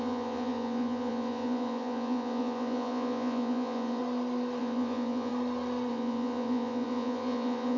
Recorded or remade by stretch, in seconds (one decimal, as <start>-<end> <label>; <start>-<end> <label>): 0.0-4.0 remade; 4.0-4.6 recorded; 4.6-5.3 remade; 5.3-5.9 recorded; 5.9-7.8 remade